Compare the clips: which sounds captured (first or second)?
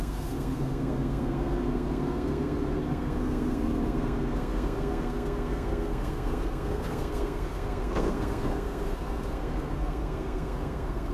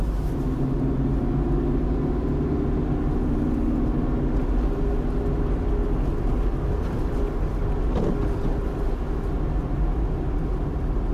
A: second